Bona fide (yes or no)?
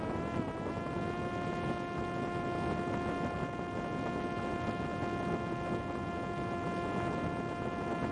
yes